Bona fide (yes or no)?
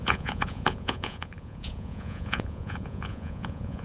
no